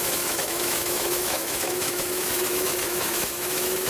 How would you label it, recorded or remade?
remade